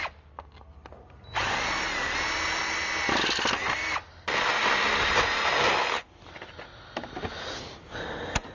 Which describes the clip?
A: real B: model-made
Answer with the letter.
A